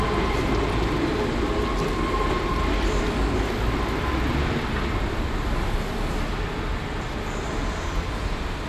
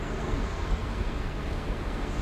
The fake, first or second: second